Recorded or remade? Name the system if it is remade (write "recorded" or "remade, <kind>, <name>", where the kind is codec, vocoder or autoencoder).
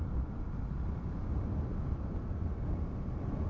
recorded